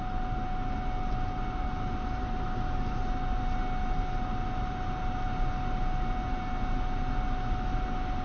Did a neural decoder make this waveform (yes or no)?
no